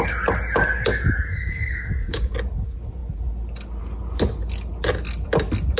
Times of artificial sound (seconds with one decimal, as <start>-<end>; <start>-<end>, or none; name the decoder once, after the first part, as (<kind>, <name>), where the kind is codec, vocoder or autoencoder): 1.3-2.3 (codec, DAC)